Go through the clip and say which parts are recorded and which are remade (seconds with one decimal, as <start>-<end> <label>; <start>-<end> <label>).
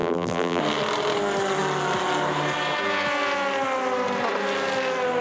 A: 0.0-0.6 remade; 0.6-5.2 recorded